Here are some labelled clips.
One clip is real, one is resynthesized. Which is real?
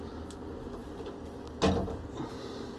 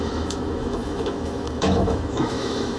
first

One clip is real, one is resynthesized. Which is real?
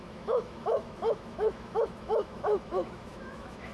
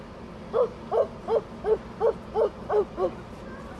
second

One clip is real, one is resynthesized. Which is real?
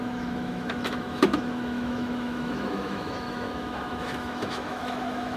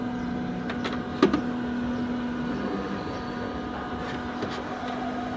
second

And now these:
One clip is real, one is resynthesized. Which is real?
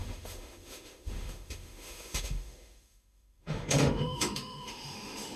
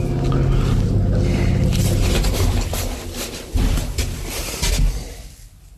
second